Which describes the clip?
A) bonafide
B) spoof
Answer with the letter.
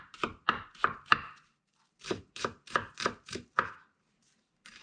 B